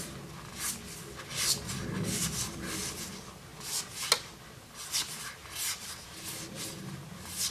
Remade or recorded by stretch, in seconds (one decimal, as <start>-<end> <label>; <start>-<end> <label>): 0.0-7.5 recorded